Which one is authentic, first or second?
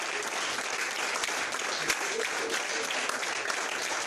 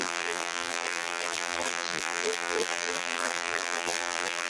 first